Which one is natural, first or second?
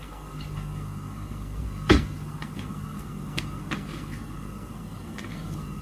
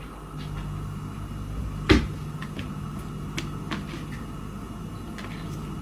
second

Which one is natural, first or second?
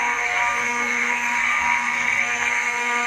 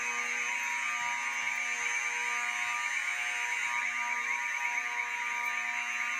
second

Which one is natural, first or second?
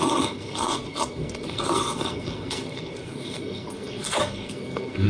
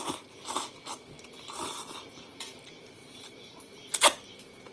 second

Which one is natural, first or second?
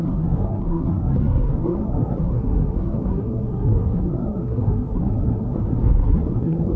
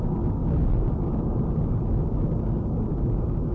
second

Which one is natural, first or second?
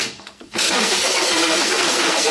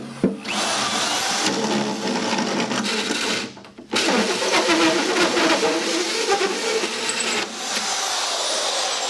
second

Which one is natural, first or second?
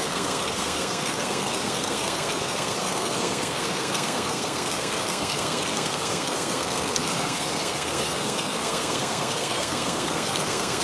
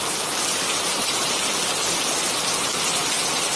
second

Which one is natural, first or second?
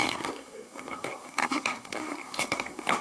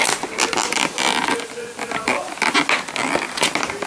second